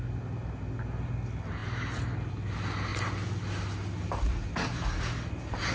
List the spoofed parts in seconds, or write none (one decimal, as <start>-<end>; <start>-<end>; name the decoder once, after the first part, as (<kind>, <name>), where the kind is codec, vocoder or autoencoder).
none